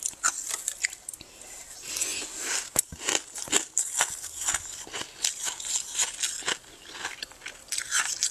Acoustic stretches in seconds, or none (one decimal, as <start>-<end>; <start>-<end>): 0.0-8.3